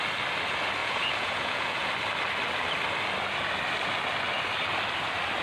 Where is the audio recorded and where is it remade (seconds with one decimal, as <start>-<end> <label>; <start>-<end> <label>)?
0.0-0.8 recorded; 0.8-1.9 remade; 1.9-5.4 recorded